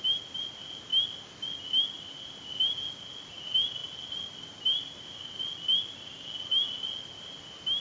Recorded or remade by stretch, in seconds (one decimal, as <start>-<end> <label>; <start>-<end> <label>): 0.0-7.8 recorded

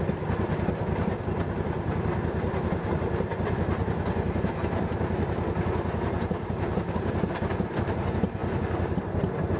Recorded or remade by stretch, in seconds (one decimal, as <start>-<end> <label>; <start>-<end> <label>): 0.0-9.6 recorded